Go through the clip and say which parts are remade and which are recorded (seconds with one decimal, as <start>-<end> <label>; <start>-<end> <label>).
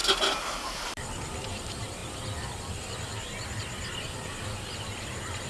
0.0-5.5 recorded